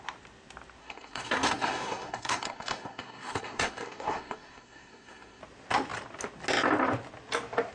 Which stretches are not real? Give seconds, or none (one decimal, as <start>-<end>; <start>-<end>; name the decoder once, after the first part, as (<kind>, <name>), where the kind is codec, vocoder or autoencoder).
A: 0.8-5.4 (codec, SNAC)